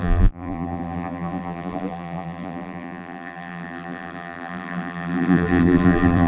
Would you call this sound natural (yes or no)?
no